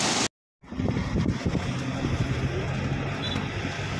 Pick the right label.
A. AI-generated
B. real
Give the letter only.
B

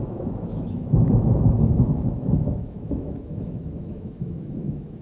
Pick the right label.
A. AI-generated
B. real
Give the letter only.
A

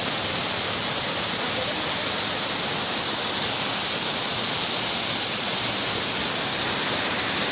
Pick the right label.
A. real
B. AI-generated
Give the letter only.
A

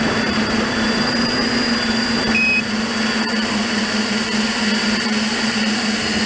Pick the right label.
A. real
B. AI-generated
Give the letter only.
B